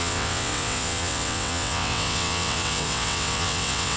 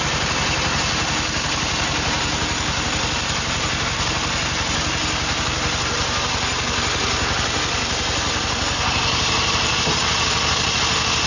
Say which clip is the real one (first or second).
second